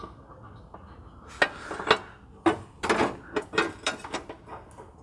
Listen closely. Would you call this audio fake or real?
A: real